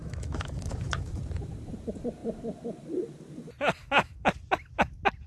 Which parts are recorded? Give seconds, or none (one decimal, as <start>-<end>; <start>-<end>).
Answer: 1.2-3.8; 4.3-5.3